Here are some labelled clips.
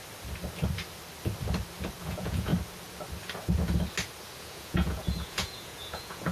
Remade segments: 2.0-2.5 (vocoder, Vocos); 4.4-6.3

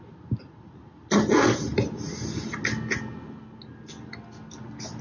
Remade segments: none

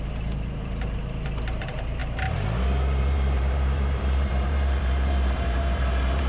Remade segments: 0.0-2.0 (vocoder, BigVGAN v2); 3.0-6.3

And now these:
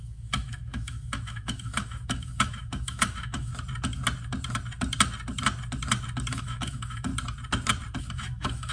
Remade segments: 0.0-3.5 (autoencoder, DAC-VAE); 6.3-7.1; 8.0-8.7

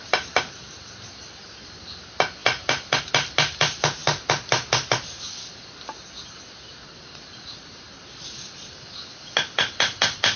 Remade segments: none

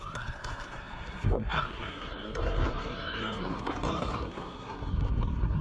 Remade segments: 0.0-5.6 (codec, SNAC)

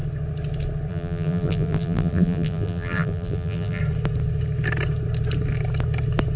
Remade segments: 0.9-3.8 (vocoder, BigVGAN v2)